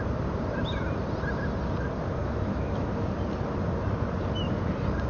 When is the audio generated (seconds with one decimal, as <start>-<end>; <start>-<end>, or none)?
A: 2.2-2.9